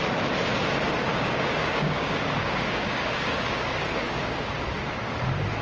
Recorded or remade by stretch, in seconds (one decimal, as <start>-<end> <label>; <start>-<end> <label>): 0.0-1.1 recorded; 1.1-4.5 remade; 4.5-5.6 recorded

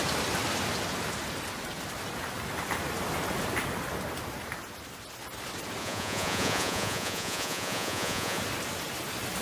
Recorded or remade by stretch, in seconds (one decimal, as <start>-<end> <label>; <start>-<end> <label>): 0.0-5.8 recorded; 5.8-8.4 remade; 8.4-9.4 recorded

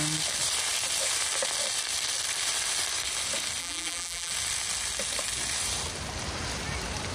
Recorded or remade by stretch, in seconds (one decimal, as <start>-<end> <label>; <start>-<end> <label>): 0.0-3.6 recorded; 3.6-4.3 remade; 4.3-7.1 recorded

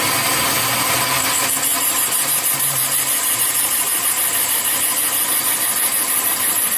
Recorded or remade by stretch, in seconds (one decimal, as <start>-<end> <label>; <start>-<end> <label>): 0.0-1.7 recorded; 1.7-4.1 remade; 4.1-6.8 recorded